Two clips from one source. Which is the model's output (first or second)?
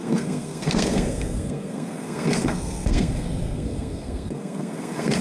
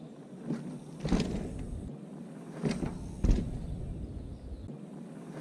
first